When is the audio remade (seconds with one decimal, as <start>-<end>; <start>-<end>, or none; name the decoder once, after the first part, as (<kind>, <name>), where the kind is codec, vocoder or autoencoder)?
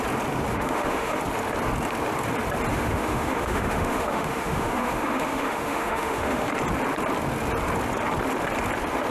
0.5-1.2 (autoencoder, DAC-VAE); 2.7-6.5